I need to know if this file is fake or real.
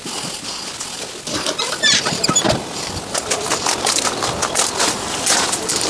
real